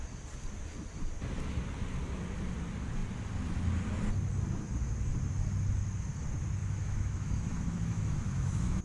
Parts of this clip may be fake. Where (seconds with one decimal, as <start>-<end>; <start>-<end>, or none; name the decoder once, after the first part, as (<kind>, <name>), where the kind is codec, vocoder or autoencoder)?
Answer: 6.6-8.8 (autoencoder, DAC-VAE)